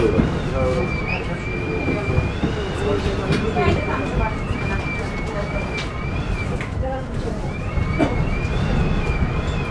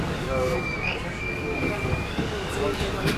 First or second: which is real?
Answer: first